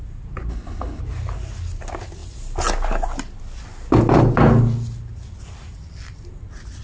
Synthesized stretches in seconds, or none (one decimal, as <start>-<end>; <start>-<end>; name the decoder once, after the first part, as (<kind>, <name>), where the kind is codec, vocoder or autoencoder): 0.5-1.0 (codec, HILCodec)